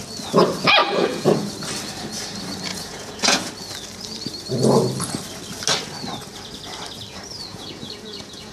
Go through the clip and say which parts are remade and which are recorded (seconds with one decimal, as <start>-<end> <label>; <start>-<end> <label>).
0.0-0.8 recorded; 0.8-1.5 remade; 1.5-2.7 recorded; 2.7-3.5 remade; 3.5-7.5 recorded; 7.5-8.5 remade